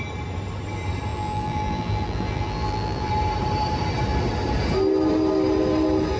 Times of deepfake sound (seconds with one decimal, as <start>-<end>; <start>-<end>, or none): 1.1-3.1